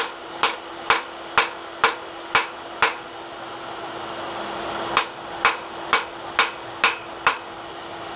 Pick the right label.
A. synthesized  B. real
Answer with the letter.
B